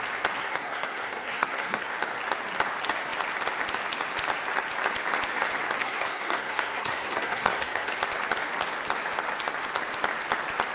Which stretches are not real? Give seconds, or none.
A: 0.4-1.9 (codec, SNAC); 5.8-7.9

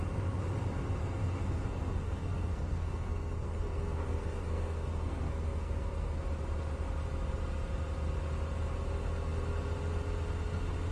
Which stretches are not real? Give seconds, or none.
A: 1.0-6.2 (codec, SNAC)

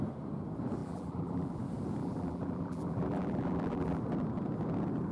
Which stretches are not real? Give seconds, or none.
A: 0.8-1.6 (vocoder, BigVGAN v2); 2.0-4.0